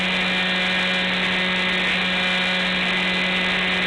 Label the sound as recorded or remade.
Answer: recorded